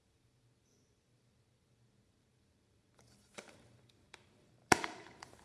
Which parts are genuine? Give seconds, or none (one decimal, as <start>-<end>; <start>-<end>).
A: none